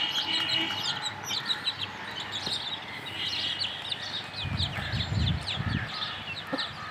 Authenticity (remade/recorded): recorded